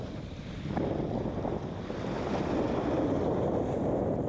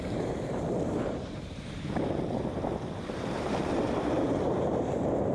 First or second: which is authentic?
first